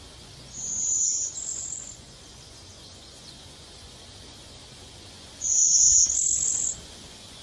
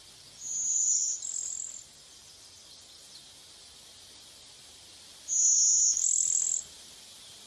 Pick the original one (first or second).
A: second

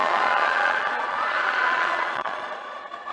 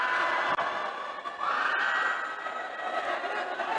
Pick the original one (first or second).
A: second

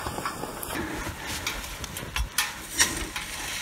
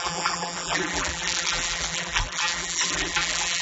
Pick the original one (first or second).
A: first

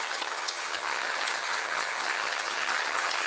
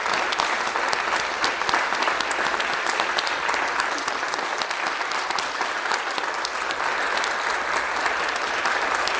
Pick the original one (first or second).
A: second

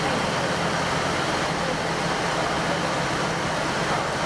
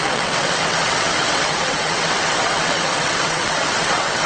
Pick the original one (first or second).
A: first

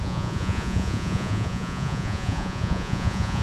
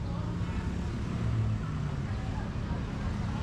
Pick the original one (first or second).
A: second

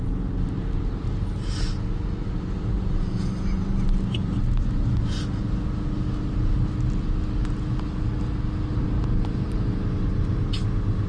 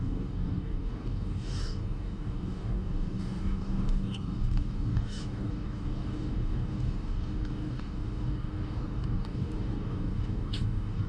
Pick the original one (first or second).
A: first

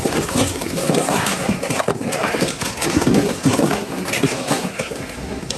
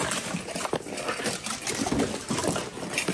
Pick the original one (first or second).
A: second